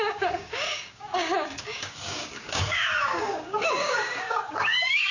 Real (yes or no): no